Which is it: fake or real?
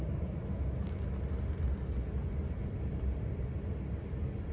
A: real